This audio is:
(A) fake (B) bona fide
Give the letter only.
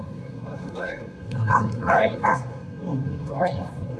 A